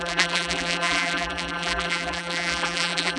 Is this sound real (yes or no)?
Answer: no